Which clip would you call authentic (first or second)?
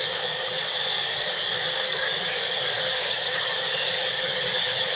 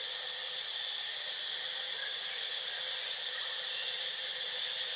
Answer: second